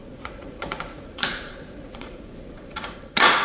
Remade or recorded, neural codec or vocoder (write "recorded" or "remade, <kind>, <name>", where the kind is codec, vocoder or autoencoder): remade, vocoder, Vocos